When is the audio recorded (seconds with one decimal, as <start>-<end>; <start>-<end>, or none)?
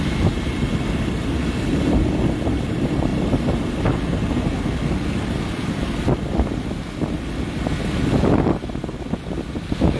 0.0-1.2; 2.0-3.1; 3.7-10.0